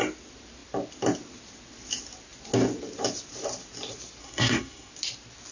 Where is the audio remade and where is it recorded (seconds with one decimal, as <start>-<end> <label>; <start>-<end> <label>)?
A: 0.0-4.2 recorded; 4.2-4.9 remade; 4.9-5.5 recorded